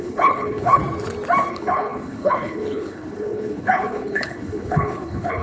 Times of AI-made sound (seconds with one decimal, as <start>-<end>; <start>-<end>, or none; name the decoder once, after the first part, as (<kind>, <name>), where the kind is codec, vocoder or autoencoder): 0.0-0.8 (codec, HILCodec); 1.5-5.4